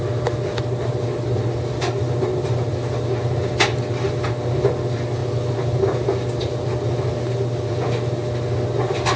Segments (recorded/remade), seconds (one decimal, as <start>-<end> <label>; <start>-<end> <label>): 0.0-9.2 recorded